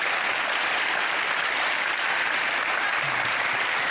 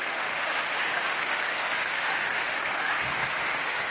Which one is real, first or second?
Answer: first